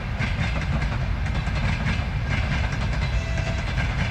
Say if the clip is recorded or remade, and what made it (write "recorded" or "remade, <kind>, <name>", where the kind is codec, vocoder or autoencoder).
recorded